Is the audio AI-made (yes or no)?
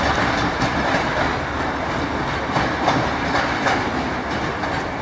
no